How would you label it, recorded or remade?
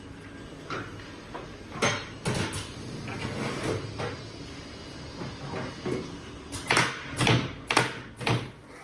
recorded